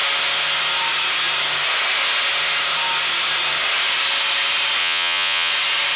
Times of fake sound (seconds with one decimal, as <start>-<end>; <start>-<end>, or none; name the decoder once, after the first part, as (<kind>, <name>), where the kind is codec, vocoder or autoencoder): 4.8-5.5 (vocoder, Vocos)